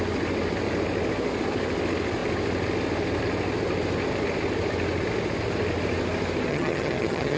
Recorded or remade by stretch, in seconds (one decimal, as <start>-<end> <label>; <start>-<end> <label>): 0.0-6.5 recorded; 6.5-7.4 remade